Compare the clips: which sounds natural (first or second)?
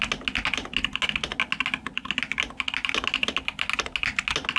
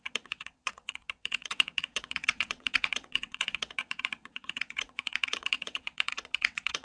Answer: first